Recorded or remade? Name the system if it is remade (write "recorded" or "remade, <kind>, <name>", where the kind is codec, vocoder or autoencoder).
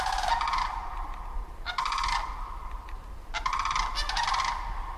recorded